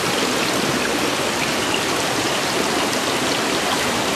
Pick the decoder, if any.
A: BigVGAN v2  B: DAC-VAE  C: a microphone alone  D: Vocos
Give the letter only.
C